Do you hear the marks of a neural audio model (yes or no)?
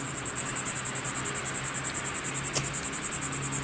no